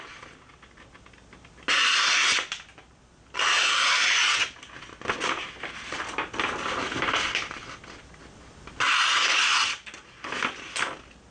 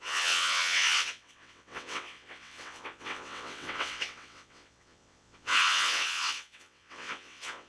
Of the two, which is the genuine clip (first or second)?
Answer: first